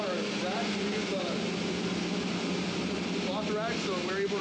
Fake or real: real